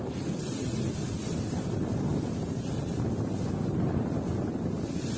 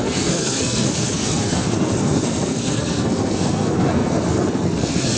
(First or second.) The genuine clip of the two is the first